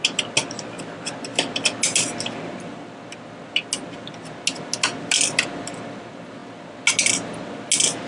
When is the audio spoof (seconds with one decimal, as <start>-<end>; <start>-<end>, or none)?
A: none

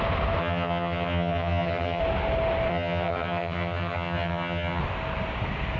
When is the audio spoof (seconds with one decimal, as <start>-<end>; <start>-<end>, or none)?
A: 0.4-2.0; 2.7-4.8

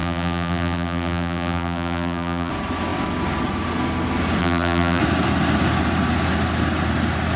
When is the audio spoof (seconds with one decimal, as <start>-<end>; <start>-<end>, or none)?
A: 0.0-2.5; 4.4-5.0

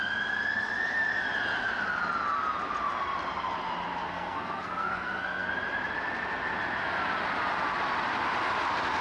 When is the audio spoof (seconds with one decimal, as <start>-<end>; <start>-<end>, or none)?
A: 4.0-5.5

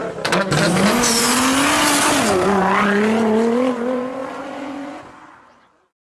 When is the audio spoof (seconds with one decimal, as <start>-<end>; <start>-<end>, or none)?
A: 3.7-6.2

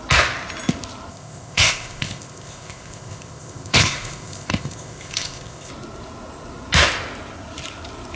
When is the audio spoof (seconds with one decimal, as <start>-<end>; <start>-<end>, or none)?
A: 1.1-5.7